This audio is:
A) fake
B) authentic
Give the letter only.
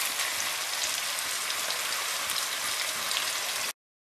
B